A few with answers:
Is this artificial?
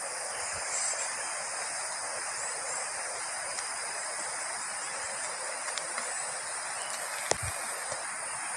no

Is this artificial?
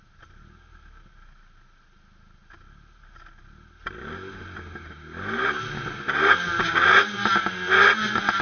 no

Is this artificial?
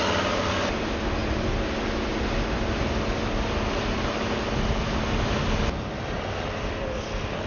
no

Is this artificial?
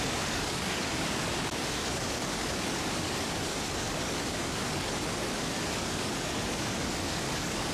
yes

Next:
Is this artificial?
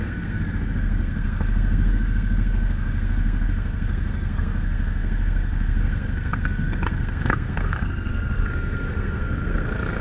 yes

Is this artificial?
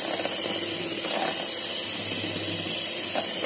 no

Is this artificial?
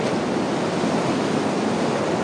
no